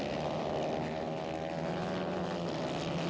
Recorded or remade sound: recorded